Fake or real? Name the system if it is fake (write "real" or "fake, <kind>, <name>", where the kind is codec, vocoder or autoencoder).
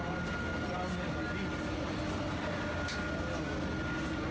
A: real